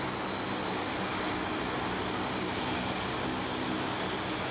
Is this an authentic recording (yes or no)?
yes